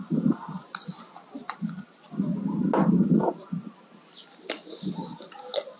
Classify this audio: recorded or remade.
recorded